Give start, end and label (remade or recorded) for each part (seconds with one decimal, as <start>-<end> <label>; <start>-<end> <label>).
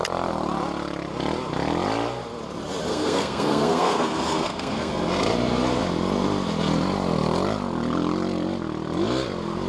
0.0-2.9 recorded; 2.9-4.9 remade; 4.9-9.7 recorded